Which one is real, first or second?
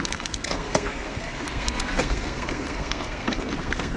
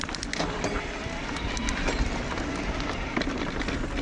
second